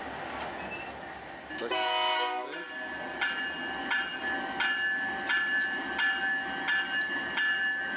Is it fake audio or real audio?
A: real